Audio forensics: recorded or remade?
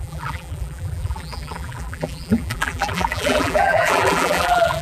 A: remade